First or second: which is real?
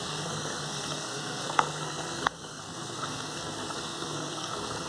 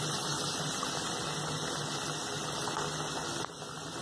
second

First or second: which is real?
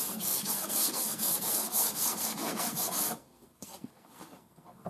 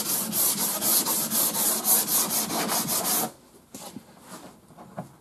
second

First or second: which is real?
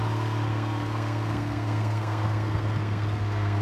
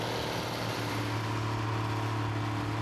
second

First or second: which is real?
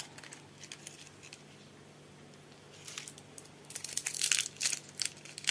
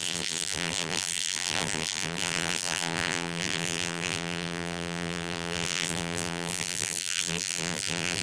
first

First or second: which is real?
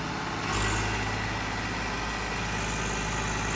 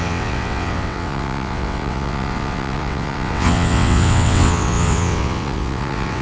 first